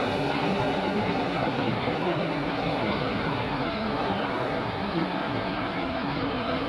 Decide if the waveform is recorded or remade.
remade